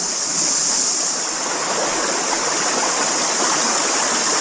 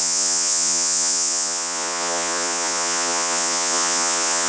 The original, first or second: first